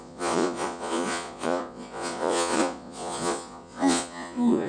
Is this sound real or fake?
fake